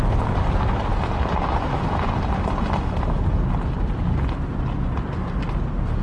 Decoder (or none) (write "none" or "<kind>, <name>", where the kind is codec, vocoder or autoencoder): none